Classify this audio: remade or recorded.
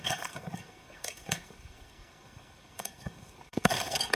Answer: remade